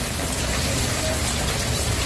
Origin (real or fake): real